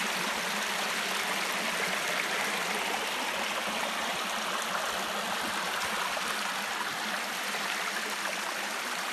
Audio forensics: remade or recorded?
recorded